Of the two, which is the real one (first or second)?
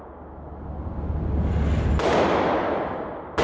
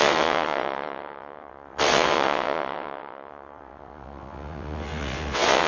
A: first